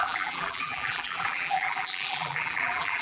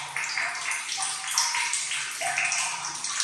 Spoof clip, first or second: first